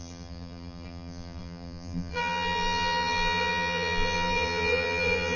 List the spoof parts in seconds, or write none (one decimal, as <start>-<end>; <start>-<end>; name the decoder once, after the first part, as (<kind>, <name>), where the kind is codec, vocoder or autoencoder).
0.0-5.4 (vocoder, BigVGAN v2)